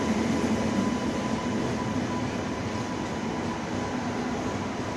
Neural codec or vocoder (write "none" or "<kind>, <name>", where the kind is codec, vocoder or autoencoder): none